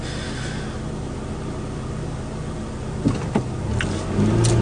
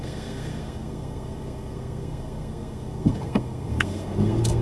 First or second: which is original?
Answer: first